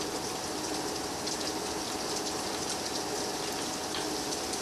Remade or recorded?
recorded